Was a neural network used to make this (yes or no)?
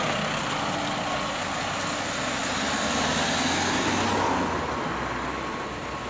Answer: no